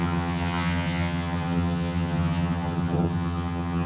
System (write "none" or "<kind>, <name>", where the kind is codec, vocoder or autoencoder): vocoder, HiFi-GAN